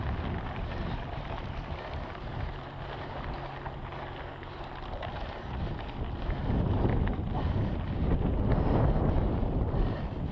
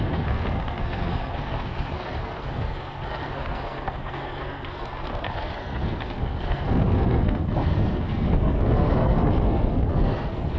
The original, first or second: first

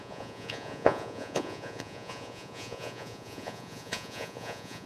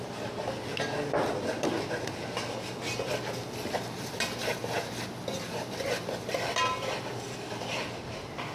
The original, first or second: second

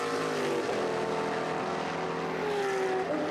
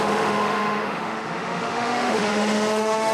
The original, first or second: first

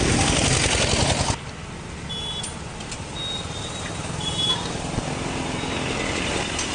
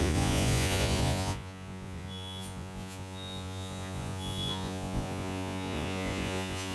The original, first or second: first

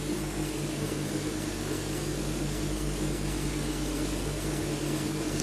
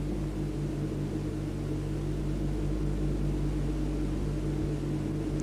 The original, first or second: second